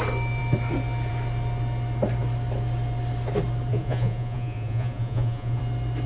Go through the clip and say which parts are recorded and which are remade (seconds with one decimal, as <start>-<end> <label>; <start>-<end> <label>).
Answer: 0.0-3.7 recorded; 3.7-5.6 remade; 5.6-6.1 recorded